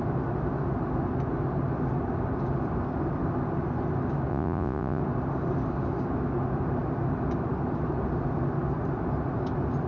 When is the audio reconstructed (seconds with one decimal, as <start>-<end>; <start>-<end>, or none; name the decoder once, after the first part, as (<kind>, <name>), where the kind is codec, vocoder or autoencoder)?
4.3-5.0 (vocoder, Vocos)